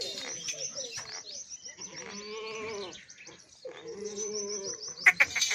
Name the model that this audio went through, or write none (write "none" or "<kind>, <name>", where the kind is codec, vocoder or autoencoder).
none